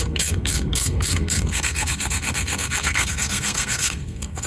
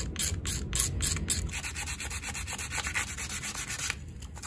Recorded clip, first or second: second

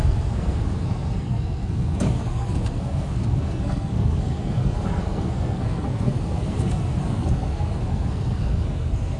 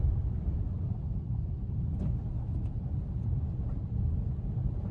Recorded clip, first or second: second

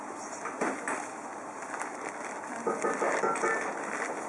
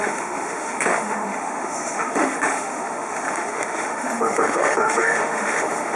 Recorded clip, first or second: first